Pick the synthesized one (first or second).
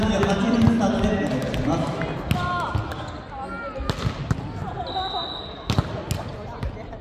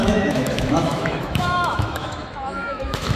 second